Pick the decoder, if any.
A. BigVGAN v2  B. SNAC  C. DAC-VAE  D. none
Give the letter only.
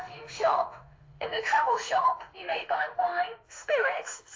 C